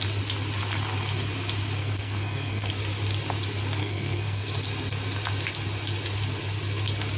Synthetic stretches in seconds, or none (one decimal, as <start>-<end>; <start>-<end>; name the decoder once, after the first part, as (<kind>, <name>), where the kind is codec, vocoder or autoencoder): 1.8-2.7 (codec, SNAC); 3.8-4.5

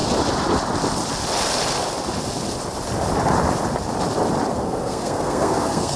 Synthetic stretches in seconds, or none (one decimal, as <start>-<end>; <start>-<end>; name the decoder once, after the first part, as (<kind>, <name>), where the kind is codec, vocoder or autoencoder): 4.5-6.0 (codec, SNAC)

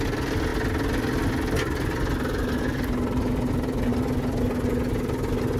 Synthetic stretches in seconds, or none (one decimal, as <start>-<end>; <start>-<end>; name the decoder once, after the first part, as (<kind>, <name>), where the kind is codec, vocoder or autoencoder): none

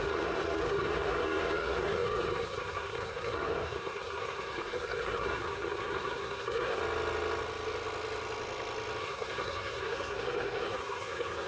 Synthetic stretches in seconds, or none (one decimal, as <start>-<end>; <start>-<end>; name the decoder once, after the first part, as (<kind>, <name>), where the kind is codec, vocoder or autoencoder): 0.0-6.8 (codec, SNAC); 9.0-11.5